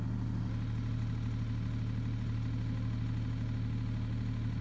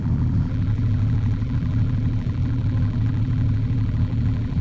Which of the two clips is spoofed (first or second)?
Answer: second